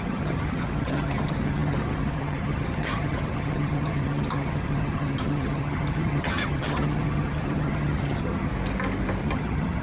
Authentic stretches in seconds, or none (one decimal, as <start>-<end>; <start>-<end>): 8.5-9.2